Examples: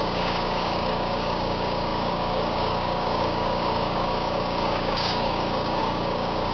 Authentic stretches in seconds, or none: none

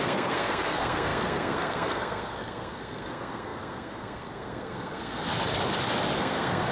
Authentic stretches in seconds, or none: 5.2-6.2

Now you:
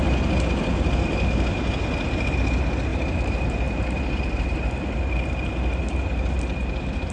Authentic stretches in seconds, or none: 0.0-2.9; 6.4-7.1

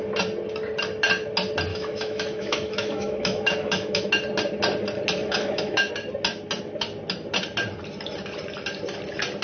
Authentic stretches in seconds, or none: 0.0-1.7; 4.1-5.2; 5.9-9.4

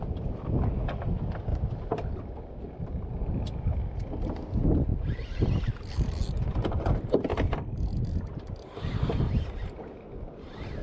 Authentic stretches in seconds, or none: 0.0-10.8

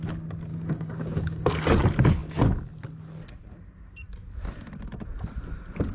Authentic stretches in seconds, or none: 0.0-0.5; 1.7-5.9

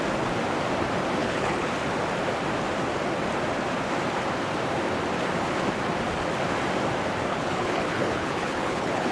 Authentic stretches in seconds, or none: 0.0-1.2; 1.7-7.3